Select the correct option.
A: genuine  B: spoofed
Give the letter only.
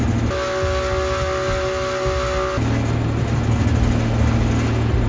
A